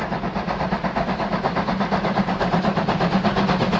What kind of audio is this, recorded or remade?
recorded